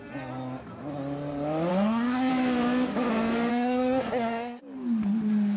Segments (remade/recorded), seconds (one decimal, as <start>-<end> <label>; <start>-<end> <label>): 0.0-1.7 recorded; 1.7-2.3 remade; 2.3-3.5 recorded; 3.5-4.6 remade; 4.6-5.6 recorded